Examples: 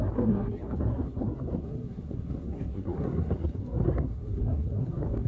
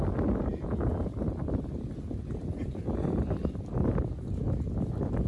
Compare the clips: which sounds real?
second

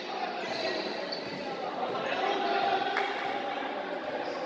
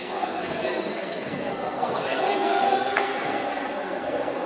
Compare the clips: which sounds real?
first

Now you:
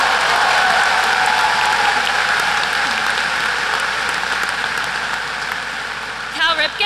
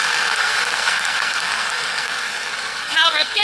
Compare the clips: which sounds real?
first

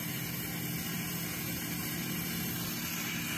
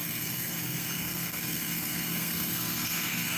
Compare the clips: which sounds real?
first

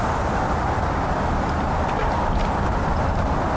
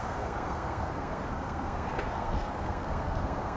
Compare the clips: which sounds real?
first